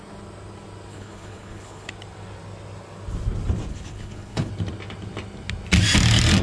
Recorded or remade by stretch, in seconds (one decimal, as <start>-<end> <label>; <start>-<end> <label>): 0.0-0.9 recorded; 0.9-1.9 remade; 1.9-3.7 recorded; 3.7-4.5 remade; 4.5-6.4 recorded